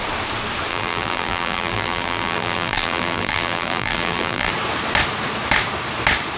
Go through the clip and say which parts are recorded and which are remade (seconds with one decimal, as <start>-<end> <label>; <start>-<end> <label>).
0.0-0.7 recorded; 0.7-4.5 remade; 4.5-6.4 recorded